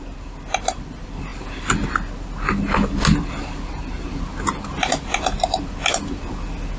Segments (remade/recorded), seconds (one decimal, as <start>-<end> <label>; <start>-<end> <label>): 0.0-6.8 recorded